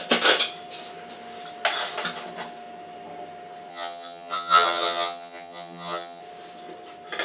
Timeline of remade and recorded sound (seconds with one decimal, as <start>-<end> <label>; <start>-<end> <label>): 0.0-3.7 recorded; 3.7-6.2 remade; 6.2-7.2 recorded